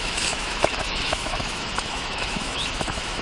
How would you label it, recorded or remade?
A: remade